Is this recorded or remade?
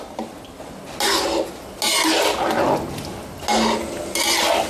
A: recorded